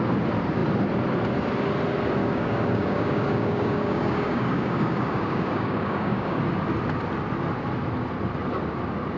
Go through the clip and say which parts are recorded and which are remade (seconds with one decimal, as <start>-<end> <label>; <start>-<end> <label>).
0.0-2.2 recorded; 2.2-6.4 remade; 6.4-9.2 recorded